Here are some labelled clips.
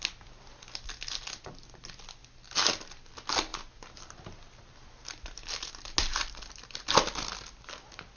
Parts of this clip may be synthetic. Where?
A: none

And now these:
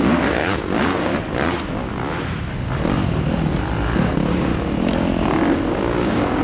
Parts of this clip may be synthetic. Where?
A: 0.0-1.1 (codec, DAC); 4.0-4.5; 5.8-6.4

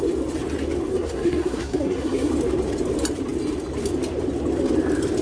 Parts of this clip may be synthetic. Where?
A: 0.9-2.3 (codec, SNAC)

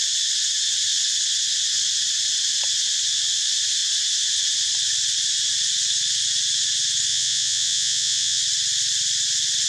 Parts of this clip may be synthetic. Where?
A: 7.1-8.4 (vocoder, Vocos)

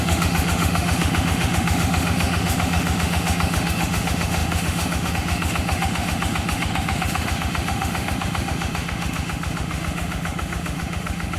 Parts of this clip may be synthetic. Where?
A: 0.0-11.4 (autoencoder, DAC-VAE)